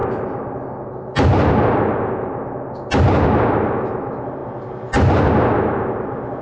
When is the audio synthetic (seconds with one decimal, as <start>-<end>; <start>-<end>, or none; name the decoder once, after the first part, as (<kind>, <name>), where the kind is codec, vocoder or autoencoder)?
none